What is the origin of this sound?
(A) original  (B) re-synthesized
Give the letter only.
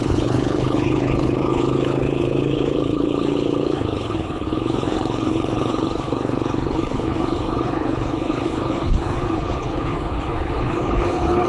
B